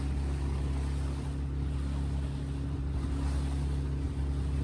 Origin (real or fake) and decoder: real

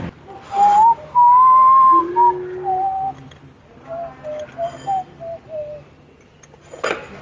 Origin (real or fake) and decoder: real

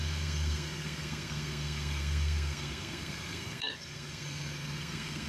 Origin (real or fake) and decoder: fake, codec, SNAC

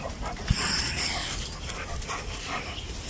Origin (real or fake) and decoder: real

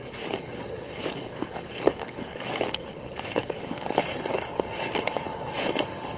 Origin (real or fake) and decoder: fake, codec, DAC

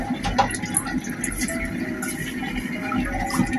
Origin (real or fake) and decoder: real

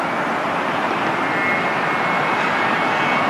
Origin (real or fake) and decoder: real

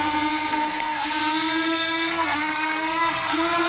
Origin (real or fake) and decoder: fake, codec, SNAC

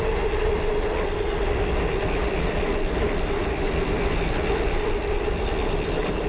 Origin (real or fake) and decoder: real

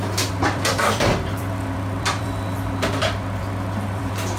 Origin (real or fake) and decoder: fake, vocoder, BigVGAN v2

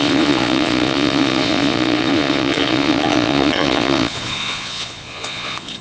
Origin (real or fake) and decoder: fake, vocoder, Vocos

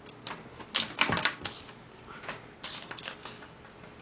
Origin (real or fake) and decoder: real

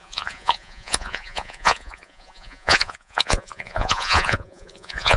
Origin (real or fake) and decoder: fake, vocoder, Vocos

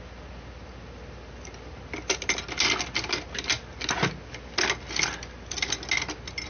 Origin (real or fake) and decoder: real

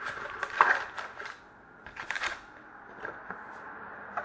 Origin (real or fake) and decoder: real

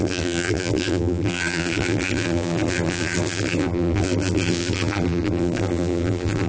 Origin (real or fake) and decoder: fake, vocoder, BigVGAN v2